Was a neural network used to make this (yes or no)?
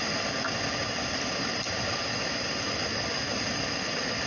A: no